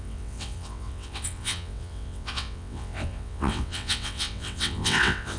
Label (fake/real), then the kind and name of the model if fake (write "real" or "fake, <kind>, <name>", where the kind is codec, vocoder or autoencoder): fake, vocoder, WaveNeXt